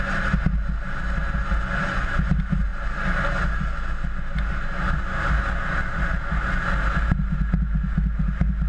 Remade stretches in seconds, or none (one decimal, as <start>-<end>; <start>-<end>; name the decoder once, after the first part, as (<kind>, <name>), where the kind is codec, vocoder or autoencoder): none